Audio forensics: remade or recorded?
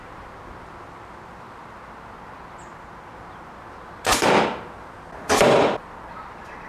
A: recorded